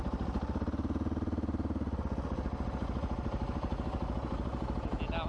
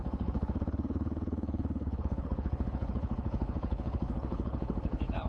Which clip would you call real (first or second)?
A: first